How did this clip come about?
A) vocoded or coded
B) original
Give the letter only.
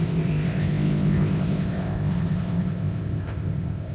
A